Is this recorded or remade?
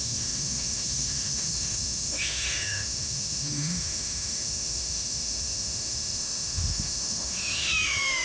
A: remade